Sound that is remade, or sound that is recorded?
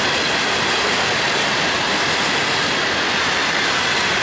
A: remade